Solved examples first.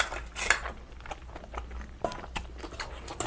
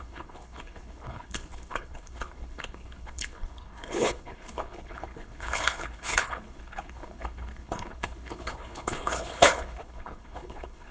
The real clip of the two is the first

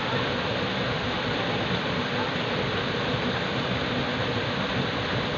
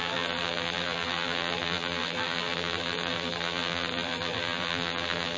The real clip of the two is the first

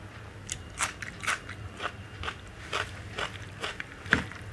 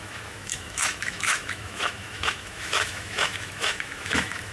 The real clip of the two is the first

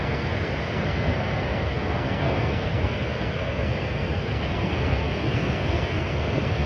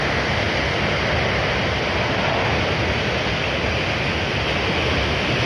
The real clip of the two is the second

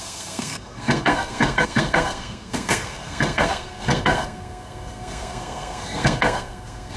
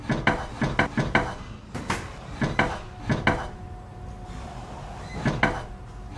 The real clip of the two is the second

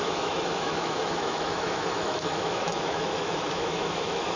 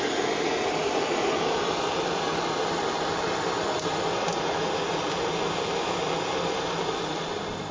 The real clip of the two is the second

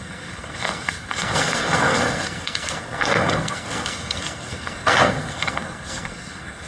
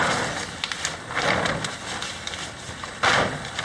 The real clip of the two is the second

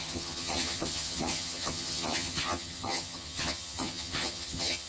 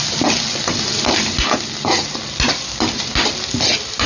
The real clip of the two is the second